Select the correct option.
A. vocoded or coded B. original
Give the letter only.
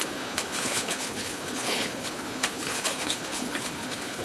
A